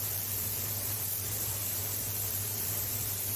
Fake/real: fake